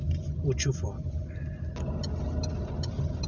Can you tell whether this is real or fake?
real